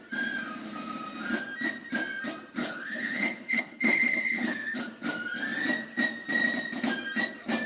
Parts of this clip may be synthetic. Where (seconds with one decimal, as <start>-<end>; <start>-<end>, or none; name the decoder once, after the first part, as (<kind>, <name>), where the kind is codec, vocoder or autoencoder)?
2.6-4.9 (codec, HILCodec)